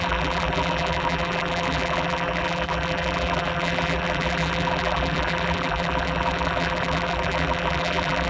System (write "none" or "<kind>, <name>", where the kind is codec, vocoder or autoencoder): vocoder, BigVGAN v2